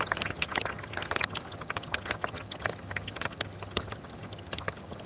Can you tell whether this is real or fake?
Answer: fake